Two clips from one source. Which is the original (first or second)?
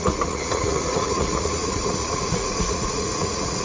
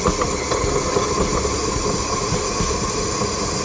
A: second